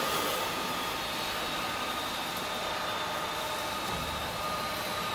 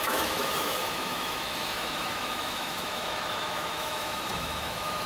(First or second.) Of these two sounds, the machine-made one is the second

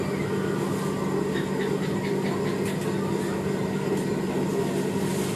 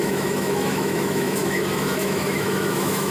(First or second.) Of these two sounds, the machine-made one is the second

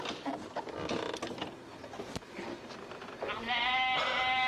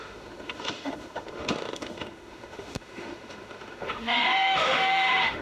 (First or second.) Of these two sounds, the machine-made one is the second